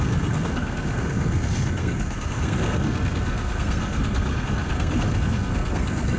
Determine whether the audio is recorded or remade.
remade